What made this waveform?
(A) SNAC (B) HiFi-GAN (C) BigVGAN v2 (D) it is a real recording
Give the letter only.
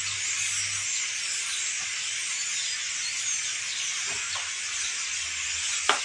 D